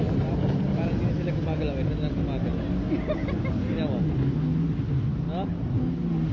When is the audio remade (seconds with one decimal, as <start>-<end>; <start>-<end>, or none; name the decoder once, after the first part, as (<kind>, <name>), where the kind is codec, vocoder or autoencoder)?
none